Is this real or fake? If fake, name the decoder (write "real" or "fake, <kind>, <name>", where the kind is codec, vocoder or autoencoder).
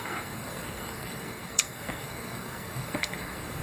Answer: fake, codec, SNAC